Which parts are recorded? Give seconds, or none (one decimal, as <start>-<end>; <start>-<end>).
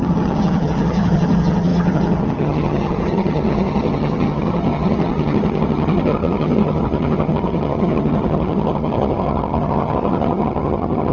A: none